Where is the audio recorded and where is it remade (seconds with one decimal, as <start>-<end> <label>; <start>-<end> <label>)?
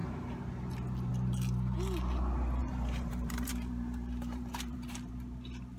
0.0-2.6 recorded; 2.6-5.1 remade; 5.1-5.8 recorded